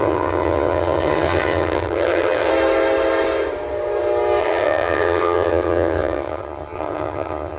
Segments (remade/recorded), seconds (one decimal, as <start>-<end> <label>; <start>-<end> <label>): 0.0-2.5 remade; 2.5-4.4 recorded; 4.4-7.6 remade